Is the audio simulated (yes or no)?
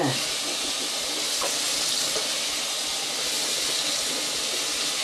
no